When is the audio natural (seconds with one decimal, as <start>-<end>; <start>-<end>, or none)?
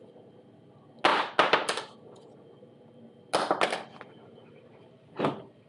0.0-5.7